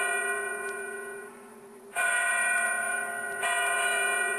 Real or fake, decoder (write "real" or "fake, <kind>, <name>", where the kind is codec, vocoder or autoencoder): fake, vocoder, Vocos